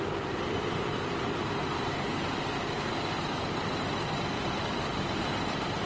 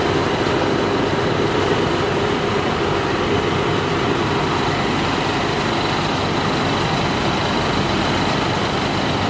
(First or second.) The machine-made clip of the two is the first